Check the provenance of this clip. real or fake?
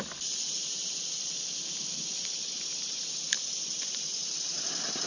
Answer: real